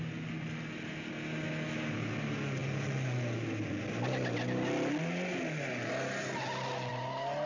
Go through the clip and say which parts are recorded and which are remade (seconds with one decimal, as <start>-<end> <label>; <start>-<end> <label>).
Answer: 0.0-7.5 recorded